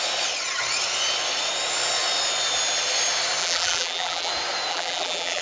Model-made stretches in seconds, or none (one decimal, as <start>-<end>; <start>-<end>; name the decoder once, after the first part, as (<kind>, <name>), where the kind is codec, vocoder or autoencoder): 3.4-4.3 (vocoder, BigVGAN v2); 4.7-5.4